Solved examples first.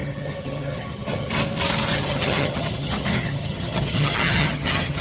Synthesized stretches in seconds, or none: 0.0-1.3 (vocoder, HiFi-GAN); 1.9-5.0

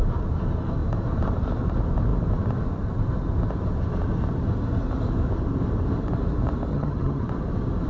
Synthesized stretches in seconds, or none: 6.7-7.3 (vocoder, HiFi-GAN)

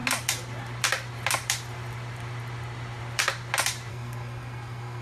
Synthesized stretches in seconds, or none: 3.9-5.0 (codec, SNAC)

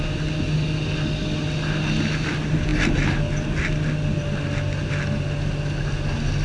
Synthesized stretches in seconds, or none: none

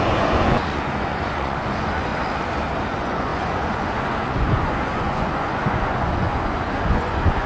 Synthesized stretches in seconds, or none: 0.0-2.1 (vocoder, Vocos); 2.9-7.5